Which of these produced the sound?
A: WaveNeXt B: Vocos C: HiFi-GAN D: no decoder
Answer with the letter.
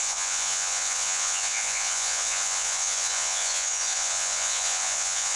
B